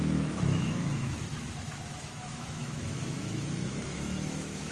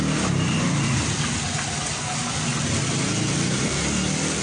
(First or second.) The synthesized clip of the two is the first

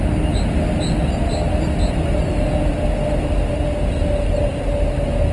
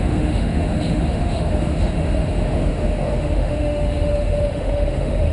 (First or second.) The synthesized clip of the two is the second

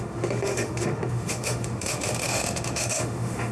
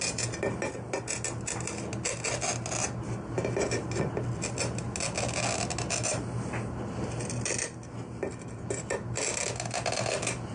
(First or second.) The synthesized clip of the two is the first